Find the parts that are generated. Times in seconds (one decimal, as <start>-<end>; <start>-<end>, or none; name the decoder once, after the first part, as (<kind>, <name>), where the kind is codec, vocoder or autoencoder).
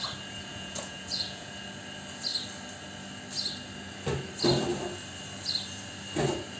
0.5-1.5 (vocoder, Vocos)